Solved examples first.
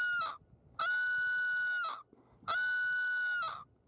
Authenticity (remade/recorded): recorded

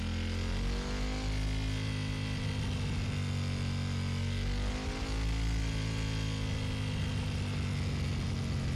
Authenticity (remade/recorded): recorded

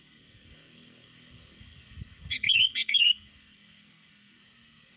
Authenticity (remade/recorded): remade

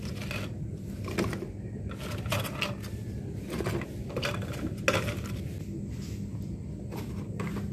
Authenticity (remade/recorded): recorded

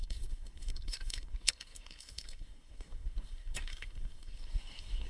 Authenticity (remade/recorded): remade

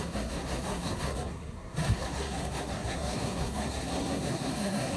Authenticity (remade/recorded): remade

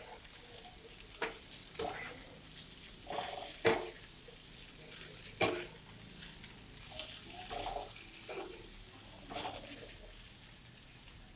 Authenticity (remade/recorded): recorded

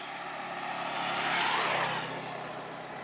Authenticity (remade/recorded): recorded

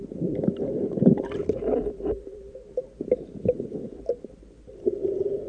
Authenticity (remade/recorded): recorded